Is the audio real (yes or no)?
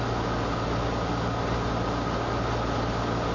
yes